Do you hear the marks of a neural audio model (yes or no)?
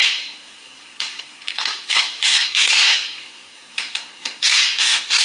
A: yes